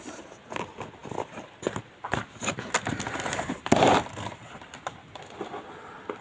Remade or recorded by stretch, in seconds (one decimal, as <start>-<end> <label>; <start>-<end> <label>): 0.0-6.2 recorded

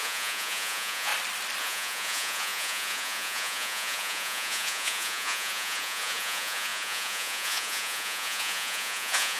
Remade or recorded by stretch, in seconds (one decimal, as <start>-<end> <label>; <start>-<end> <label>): 0.0-1.1 remade; 1.1-1.6 recorded; 1.6-9.4 remade